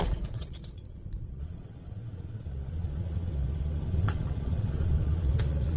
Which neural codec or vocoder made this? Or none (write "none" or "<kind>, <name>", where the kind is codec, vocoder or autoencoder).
vocoder, Vocos